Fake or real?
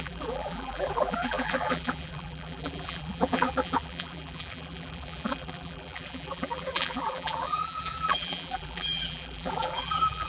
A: fake